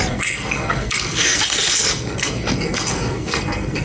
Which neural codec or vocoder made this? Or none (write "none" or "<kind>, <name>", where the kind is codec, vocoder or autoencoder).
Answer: codec, SNAC